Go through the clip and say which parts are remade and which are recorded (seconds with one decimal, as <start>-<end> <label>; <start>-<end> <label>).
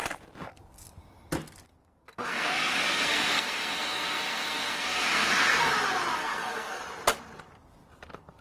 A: 0.0-1.8 recorded; 1.8-5.7 remade; 5.7-6.2 recorded; 6.2-6.8 remade; 6.8-8.4 recorded